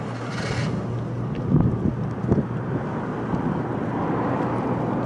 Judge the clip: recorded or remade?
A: recorded